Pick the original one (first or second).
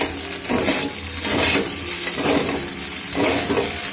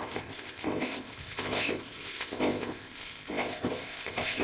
first